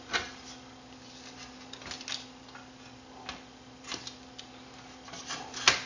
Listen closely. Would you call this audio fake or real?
real